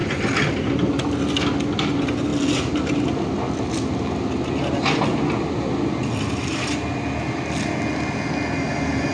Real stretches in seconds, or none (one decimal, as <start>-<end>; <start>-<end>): 0.0-9.1